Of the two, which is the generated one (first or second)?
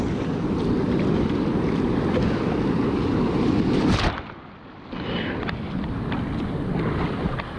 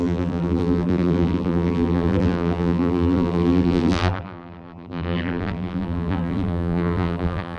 second